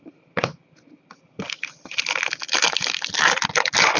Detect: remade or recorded recorded